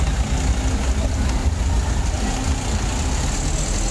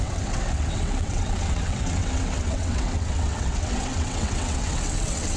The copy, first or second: second